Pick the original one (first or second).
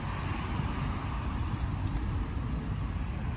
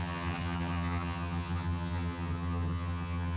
first